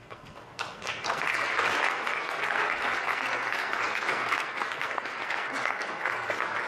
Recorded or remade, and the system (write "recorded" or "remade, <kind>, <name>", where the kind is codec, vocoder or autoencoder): remade, codec, SNAC